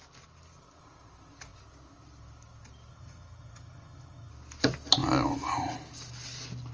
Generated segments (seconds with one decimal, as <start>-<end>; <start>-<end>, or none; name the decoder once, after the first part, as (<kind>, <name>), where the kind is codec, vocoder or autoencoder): 2.9-4.3 (vocoder, HiFi-GAN)